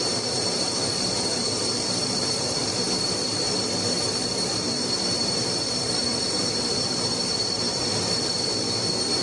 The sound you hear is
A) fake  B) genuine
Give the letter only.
A